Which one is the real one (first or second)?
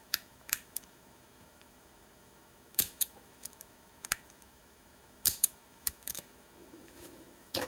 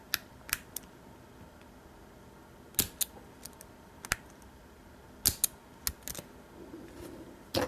second